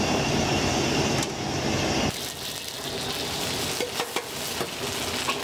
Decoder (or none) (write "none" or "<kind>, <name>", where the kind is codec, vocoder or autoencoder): none